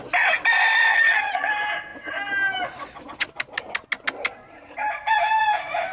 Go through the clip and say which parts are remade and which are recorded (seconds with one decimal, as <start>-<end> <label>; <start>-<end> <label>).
0.0-0.9 recorded; 0.9-1.5 remade; 1.5-5.9 recorded